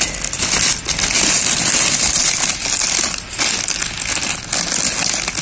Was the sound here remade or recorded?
recorded